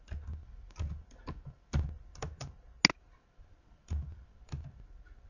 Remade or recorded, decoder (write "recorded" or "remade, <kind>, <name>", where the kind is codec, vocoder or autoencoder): recorded